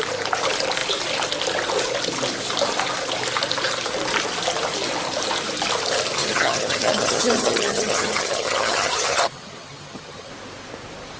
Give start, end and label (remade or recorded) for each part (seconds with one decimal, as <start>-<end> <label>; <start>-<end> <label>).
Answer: 0.0-6.2 recorded; 6.2-10.3 remade; 10.3-11.2 recorded